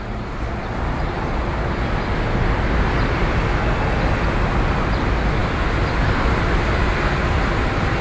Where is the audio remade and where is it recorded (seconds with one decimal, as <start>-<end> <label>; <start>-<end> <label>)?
0.0-8.0 recorded